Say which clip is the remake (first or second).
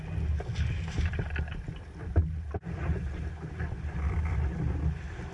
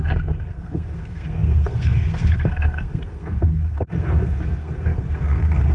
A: second